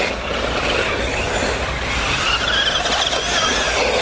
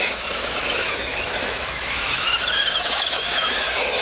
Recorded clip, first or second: first